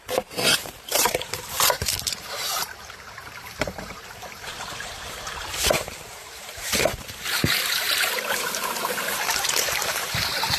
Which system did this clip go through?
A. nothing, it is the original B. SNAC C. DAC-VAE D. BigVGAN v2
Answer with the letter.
D